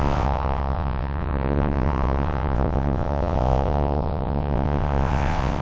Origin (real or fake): fake